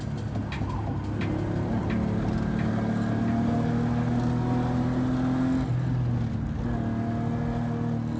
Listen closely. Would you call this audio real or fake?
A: real